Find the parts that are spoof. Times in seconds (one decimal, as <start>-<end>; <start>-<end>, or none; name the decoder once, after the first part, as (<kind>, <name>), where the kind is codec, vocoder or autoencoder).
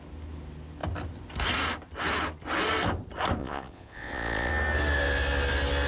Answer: 3.4-4.5 (vocoder, Vocos)